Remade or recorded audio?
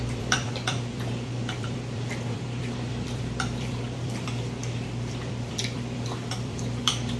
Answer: remade